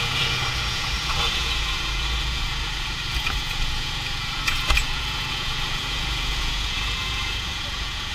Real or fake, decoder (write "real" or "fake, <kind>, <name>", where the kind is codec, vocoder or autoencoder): fake, vocoder, Vocos